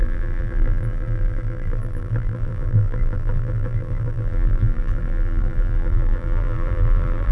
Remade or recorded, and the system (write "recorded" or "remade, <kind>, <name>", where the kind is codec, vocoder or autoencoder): remade, vocoder, BigVGAN v2